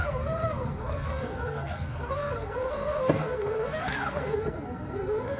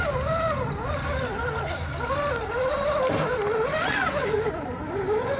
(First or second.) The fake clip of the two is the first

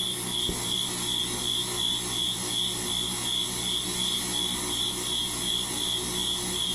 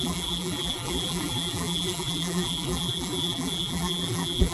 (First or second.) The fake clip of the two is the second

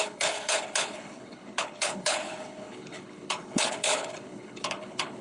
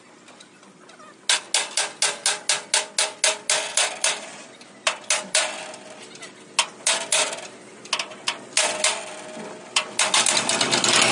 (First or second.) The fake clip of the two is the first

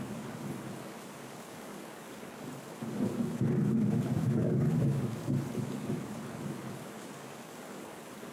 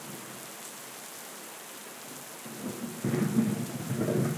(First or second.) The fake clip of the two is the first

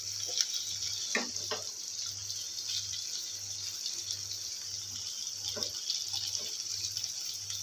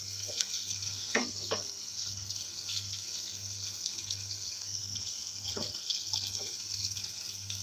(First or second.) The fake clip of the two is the second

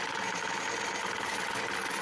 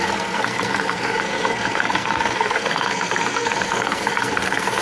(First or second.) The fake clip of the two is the second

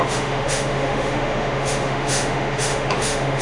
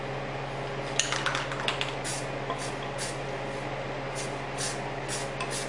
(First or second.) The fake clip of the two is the first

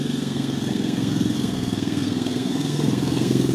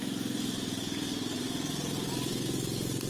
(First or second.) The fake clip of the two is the first